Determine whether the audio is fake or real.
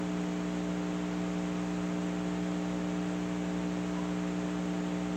real